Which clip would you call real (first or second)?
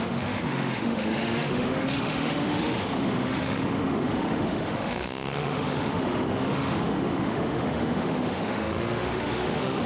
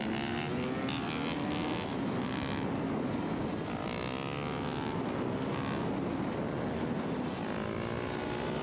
second